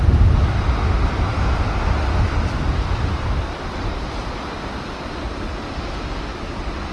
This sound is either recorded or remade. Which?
recorded